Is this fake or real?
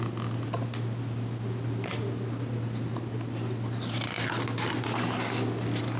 real